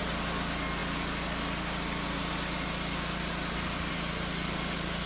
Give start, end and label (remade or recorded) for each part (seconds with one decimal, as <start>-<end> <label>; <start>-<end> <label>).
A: 0.0-5.1 recorded